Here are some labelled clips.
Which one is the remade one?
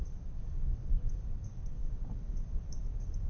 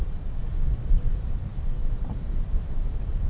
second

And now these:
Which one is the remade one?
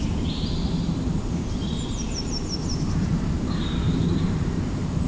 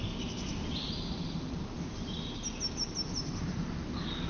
first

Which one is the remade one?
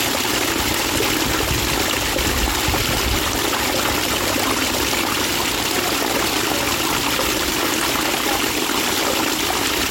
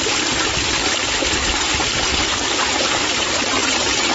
second